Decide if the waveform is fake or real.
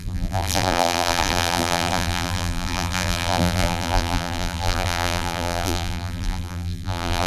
fake